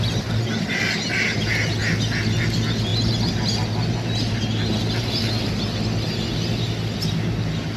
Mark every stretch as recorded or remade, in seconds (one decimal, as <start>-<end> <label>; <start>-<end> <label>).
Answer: 0.0-7.8 recorded